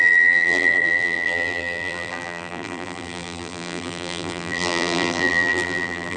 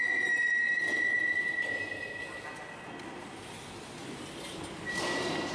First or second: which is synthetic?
first